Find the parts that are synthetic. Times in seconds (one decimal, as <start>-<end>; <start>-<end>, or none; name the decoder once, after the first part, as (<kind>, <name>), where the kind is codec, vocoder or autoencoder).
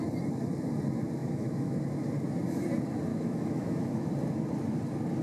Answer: 1.2-1.8 (autoencoder, DAC-VAE); 3.1-4.1